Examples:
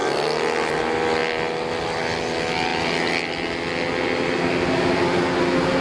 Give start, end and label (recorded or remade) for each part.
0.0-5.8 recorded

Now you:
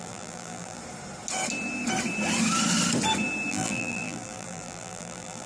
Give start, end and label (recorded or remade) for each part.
0.0-0.8 remade; 0.8-3.5 recorded; 3.5-5.5 remade

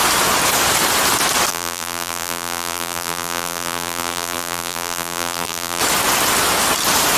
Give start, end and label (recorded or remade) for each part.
0.0-1.5 recorded; 1.5-5.8 remade; 5.8-7.2 recorded

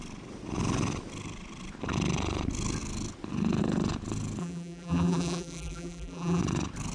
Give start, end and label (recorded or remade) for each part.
0.0-4.4 recorded; 4.4-6.4 remade; 6.4-6.9 recorded

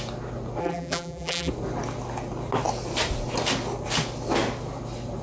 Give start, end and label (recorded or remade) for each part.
0.0-0.6 recorded; 0.6-1.5 remade; 1.5-5.2 recorded

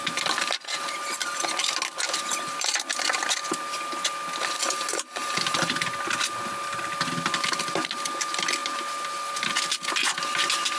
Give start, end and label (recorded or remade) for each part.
0.0-10.8 recorded

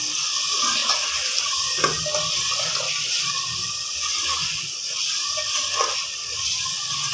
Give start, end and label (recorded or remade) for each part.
0.0-0.8 recorded; 0.8-1.4 remade; 1.4-2.5 recorded; 2.5-7.1 remade